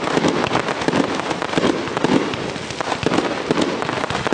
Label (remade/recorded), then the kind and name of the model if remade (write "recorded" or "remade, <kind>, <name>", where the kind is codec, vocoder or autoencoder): recorded